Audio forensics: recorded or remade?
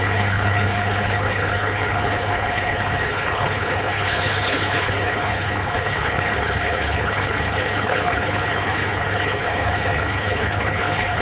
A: remade